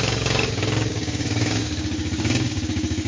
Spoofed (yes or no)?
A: yes